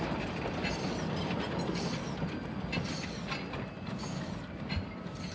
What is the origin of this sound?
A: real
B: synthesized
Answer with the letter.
A